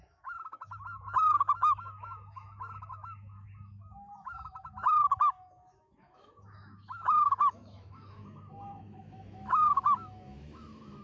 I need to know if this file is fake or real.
fake